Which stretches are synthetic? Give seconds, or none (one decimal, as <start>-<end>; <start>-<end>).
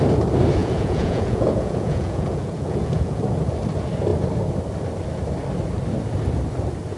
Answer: 0.6-3.2